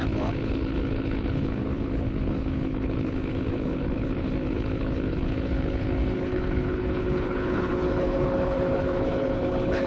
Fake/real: fake